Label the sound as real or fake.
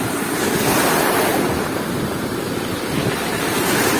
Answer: real